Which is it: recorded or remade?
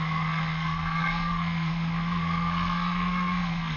remade